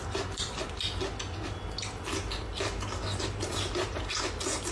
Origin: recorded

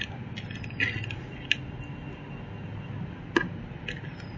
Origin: recorded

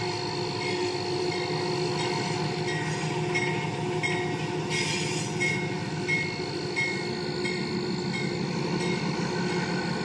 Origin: recorded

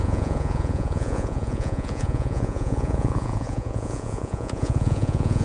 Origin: remade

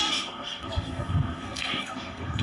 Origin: remade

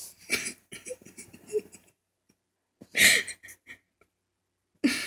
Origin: recorded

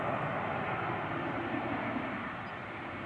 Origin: recorded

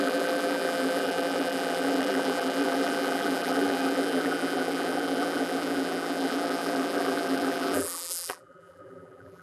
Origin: remade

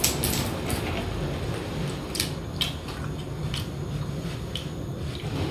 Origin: recorded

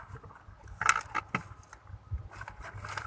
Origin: recorded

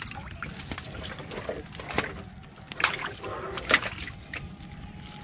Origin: recorded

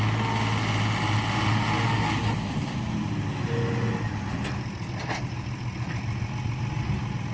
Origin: recorded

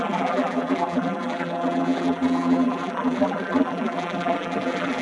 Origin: remade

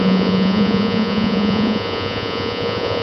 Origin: remade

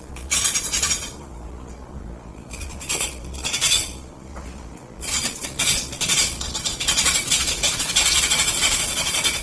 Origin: remade